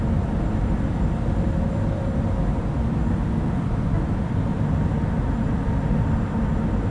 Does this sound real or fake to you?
real